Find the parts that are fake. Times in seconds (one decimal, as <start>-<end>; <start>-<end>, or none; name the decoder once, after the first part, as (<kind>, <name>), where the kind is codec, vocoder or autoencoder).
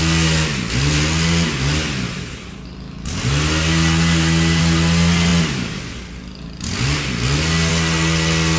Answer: none